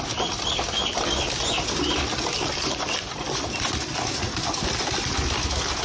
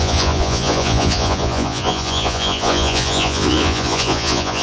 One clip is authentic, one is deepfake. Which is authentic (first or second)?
first